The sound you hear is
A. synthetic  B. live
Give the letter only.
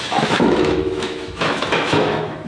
A